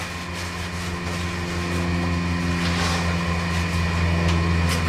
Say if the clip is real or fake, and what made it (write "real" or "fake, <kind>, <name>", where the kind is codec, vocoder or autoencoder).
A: real